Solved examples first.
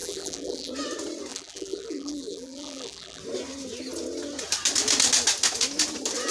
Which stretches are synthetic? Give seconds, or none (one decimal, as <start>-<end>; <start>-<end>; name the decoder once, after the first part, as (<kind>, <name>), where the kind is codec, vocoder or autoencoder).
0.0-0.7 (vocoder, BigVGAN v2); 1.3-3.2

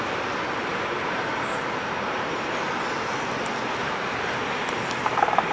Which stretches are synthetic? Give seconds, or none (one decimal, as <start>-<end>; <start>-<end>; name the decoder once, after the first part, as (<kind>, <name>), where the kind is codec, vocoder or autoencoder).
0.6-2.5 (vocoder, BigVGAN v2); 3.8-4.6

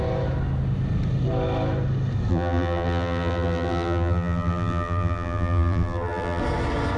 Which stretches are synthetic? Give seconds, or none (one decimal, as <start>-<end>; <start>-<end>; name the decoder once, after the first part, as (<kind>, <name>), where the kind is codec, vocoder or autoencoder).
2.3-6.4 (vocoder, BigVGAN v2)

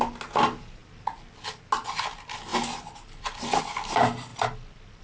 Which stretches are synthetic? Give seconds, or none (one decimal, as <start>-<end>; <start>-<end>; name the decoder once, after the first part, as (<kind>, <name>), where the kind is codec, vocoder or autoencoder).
none